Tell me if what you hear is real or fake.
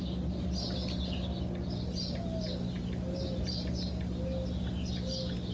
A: real